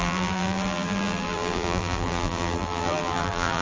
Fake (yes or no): yes